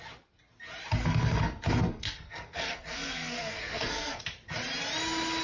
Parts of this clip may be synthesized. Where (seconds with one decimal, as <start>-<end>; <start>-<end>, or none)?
1.0-4.2